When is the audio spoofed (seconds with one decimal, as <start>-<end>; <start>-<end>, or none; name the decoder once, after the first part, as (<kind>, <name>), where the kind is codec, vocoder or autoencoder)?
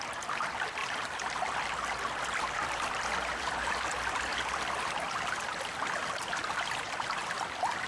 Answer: 0.0-4.3 (vocoder, BigVGAN v2); 6.0-7.9